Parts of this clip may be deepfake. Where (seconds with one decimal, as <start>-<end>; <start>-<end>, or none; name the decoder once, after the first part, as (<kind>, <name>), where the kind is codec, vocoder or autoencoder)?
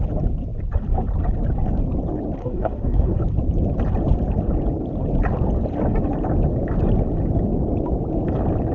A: 2.4-3.2 (codec, SNAC)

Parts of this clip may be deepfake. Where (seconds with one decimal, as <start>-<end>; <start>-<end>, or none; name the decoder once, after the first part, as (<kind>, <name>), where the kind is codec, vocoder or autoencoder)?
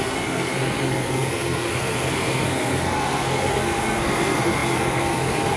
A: 0.0-5.6 (codec, SNAC)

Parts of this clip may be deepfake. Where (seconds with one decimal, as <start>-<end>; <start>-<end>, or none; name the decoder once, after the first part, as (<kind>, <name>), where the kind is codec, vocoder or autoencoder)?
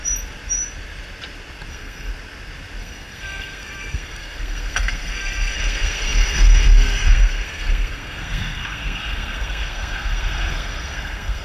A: 1.7-2.1 (codec, SNAC); 2.8-11.4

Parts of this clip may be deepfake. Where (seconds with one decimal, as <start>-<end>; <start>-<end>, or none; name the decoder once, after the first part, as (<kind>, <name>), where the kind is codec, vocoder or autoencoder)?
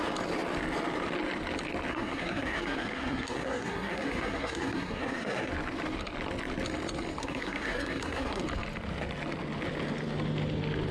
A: 1.9-5.5 (codec, SNAC); 7.2-8.4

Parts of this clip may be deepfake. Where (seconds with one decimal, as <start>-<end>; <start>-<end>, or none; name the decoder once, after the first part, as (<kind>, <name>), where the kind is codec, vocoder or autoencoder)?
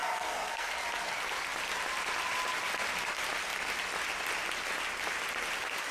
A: 0.0-0.7 (codec, SNAC)